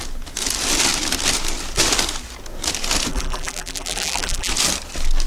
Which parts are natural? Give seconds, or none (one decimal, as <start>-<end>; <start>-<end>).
0.0-3.1; 4.5-5.3